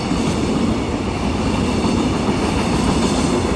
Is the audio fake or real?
real